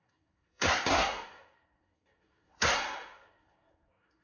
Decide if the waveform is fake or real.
fake